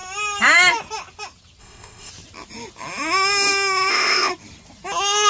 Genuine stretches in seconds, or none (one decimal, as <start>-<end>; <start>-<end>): 0.0-1.6; 2.1-3.9; 4.3-5.3